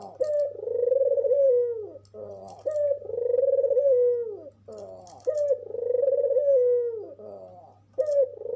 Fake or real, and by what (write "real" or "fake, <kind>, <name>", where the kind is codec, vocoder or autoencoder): real